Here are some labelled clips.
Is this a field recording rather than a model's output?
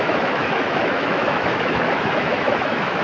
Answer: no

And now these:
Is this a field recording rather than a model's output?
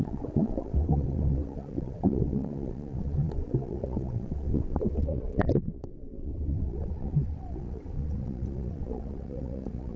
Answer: no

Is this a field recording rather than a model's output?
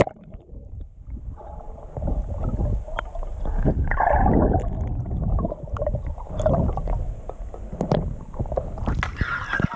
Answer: yes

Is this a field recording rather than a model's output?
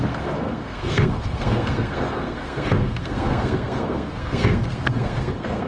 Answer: no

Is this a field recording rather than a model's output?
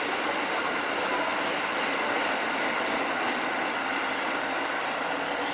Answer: yes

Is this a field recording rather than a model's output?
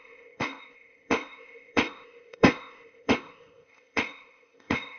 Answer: no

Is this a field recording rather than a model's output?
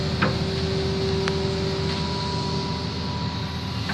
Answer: yes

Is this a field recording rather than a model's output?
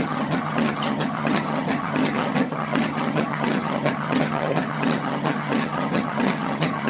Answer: no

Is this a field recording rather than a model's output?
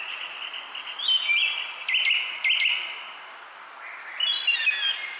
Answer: yes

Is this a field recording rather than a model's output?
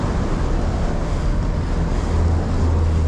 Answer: yes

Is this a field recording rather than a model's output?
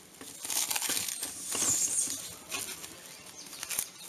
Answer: yes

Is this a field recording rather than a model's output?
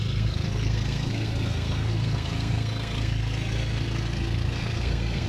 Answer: no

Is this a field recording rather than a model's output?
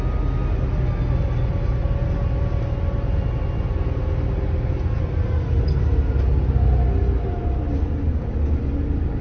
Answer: yes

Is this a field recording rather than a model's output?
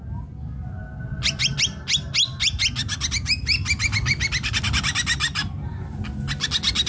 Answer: yes